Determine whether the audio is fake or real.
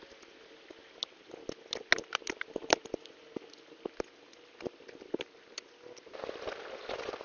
real